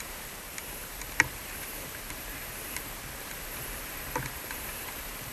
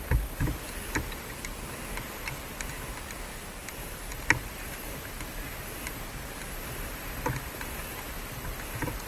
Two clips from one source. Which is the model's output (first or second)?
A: first